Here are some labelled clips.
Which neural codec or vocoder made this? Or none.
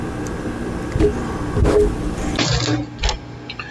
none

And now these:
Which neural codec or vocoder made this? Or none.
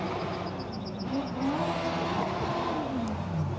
none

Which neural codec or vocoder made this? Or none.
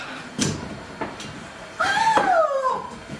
vocoder, BigVGAN v2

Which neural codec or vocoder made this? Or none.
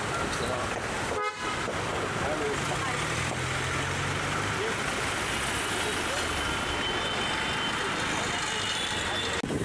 none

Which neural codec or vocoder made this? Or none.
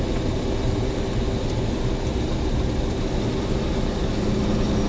none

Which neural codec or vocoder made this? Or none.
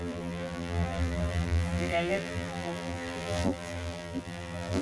vocoder, BigVGAN v2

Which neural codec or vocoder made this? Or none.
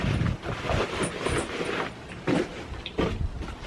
none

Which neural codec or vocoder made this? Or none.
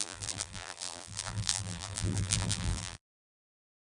vocoder, BigVGAN v2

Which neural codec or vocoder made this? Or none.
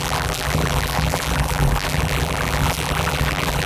vocoder, BigVGAN v2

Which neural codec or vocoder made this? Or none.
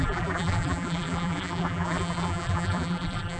vocoder, BigVGAN v2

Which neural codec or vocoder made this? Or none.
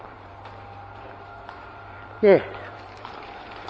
vocoder, BigVGAN v2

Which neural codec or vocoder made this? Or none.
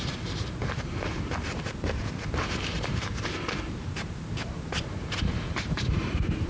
vocoder, BigVGAN v2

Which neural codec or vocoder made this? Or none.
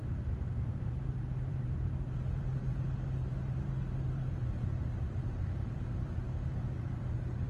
vocoder, BigVGAN v2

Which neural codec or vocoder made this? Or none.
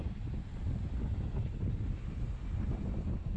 none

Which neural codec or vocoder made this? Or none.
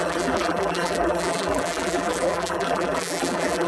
vocoder, BigVGAN v2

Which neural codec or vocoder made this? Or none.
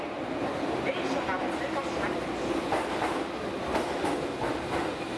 none